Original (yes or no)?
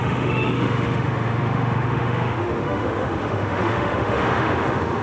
no